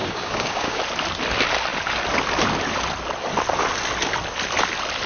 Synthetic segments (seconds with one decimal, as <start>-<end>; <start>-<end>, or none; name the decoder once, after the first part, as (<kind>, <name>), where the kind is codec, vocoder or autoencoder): 0.0-0.8 (codec, DAC)